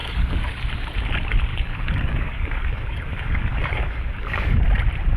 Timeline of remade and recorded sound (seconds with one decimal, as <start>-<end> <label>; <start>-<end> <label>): 0.0-0.6 remade; 0.6-1.5 recorded; 1.5-4.6 remade; 4.6-5.2 recorded